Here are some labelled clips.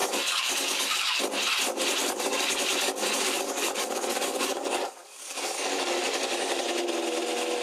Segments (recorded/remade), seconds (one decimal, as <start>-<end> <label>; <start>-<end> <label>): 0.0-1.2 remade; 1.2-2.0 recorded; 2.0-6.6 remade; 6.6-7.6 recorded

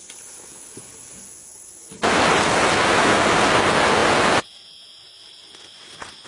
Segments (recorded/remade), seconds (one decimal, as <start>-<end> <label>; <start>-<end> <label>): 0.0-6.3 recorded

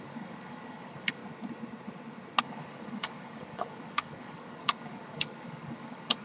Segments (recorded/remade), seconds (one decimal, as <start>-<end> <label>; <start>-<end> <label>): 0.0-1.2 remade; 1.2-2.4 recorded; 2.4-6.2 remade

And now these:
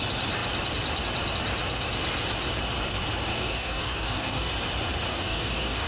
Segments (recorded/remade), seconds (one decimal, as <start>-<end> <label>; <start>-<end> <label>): 0.0-3.3 recorded; 3.3-4.5 remade; 4.5-5.1 recorded; 5.1-5.9 remade

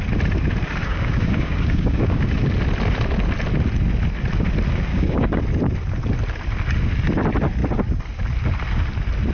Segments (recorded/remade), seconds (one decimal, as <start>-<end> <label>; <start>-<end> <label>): 0.0-0.8 recorded; 0.8-2.2 remade; 2.2-4.9 recorded; 4.9-5.4 remade; 5.4-9.3 recorded

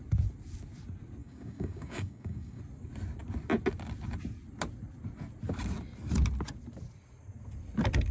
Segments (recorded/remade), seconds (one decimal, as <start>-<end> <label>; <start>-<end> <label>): 0.0-1.2 recorded; 1.2-2.6 remade; 2.6-8.1 recorded